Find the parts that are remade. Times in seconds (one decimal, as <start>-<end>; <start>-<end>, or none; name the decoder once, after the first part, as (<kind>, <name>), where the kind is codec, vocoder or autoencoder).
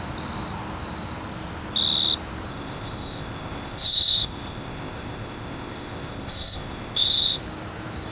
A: 2.5-7.4 (codec, ZipCodec)